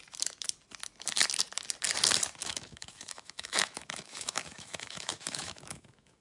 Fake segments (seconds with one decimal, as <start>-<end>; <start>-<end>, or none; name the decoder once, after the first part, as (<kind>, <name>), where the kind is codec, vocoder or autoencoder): 2.4-6.2 (autoencoder, DAC-VAE)